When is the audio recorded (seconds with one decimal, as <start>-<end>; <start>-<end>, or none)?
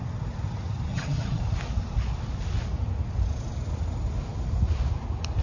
0.0-0.9; 1.4-5.4